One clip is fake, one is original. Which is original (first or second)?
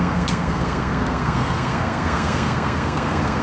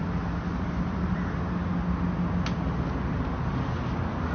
second